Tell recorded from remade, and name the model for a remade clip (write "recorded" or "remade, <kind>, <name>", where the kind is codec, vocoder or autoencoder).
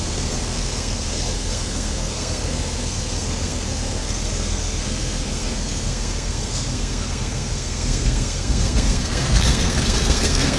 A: remade, codec, SNAC